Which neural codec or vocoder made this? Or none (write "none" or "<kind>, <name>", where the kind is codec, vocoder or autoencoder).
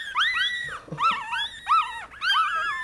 none